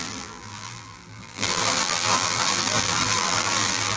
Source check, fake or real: fake